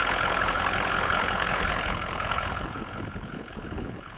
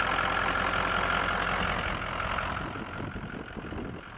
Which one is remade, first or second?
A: first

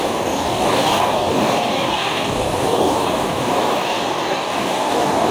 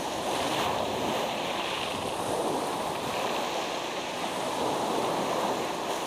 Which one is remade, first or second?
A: first